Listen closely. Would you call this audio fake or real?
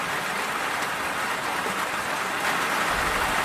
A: real